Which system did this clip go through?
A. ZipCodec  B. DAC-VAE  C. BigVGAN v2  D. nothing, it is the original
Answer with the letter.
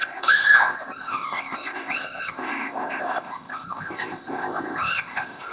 A